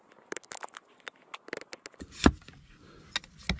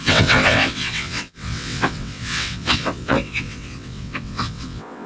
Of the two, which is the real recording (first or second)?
first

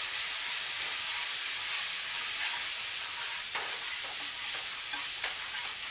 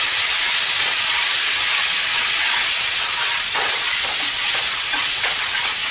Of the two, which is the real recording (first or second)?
first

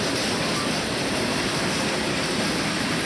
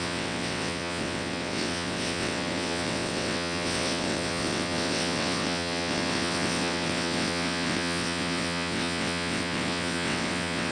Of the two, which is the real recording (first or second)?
first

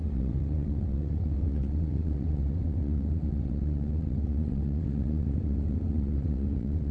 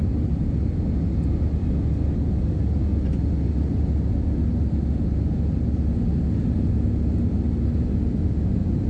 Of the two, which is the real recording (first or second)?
second